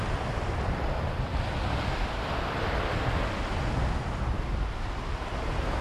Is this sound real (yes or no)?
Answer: yes